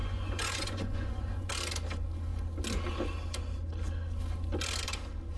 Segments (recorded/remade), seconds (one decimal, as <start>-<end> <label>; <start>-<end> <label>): 0.0-1.5 remade; 1.5-5.4 recorded

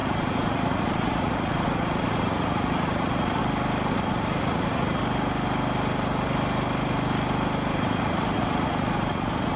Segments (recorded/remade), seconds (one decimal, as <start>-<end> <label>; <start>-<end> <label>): 0.0-3.4 remade; 3.4-3.9 recorded; 3.9-5.0 remade; 5.0-7.7 recorded; 7.7-9.6 remade

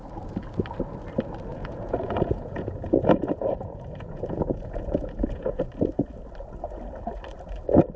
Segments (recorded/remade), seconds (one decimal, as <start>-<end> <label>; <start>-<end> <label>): 0.0-1.5 recorded; 1.5-5.6 remade; 5.6-8.0 recorded

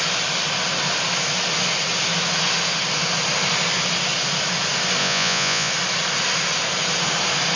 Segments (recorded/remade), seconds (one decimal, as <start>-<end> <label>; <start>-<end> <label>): 0.0-5.0 recorded; 5.0-5.7 remade; 5.7-7.6 recorded

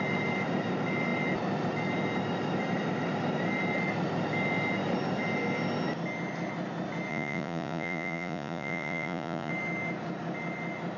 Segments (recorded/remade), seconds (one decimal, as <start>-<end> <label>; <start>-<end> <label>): 0.0-7.1 recorded; 7.1-9.5 remade; 9.5-11.0 recorded

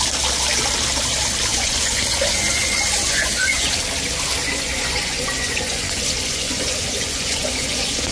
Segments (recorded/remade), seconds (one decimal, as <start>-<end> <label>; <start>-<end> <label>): 0.0-1.5 recorded; 1.5-3.7 remade; 3.7-4.4 recorded; 4.4-8.1 remade

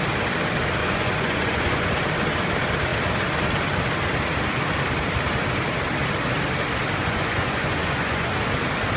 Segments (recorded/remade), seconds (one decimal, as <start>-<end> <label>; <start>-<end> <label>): 0.0-0.8 recorded; 0.8-1.9 remade; 1.9-7.0 recorded; 7.0-8.3 remade; 8.3-9.0 recorded

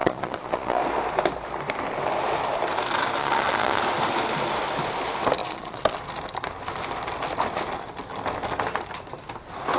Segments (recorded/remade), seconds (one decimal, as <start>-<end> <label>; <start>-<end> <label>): 0.0-0.8 remade; 0.8-3.2 recorded; 3.2-3.8 remade; 3.8-5.4 recorded; 5.4-6.0 remade; 6.0-9.8 recorded